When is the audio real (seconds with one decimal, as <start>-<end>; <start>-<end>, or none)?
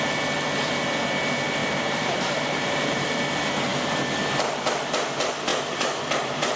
0.0-1.6; 3.2-5.5